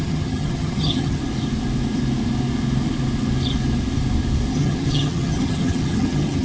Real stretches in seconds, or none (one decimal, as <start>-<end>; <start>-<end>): 1.2-4.5